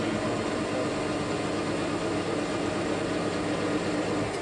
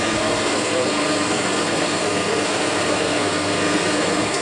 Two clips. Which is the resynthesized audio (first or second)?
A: second